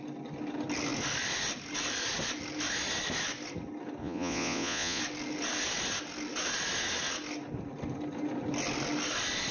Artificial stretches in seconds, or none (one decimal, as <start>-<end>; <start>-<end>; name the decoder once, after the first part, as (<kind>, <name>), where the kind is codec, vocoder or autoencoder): 4.0-5.0 (vocoder, Vocos)